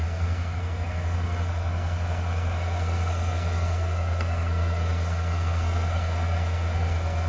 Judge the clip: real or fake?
fake